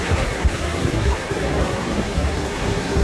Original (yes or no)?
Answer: no